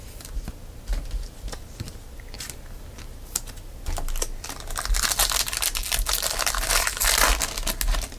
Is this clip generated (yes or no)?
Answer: no